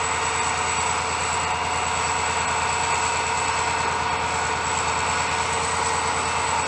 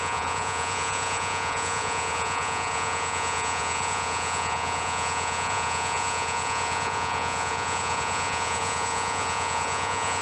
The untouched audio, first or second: first